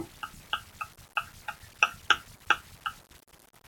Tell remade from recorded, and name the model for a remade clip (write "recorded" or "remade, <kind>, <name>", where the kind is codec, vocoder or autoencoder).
recorded